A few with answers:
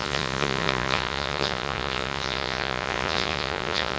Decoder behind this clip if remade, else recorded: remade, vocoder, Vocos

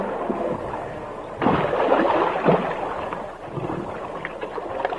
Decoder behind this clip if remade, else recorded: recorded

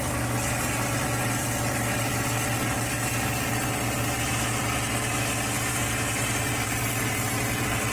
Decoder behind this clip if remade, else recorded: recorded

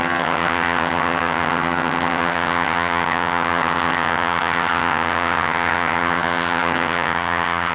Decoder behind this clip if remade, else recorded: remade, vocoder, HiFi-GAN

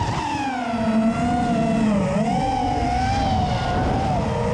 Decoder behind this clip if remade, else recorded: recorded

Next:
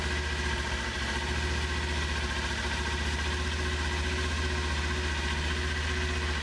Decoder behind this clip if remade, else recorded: recorded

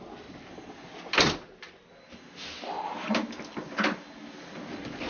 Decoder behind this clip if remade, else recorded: recorded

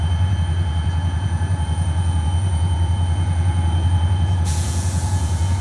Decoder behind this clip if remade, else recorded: remade, vocoder, Vocos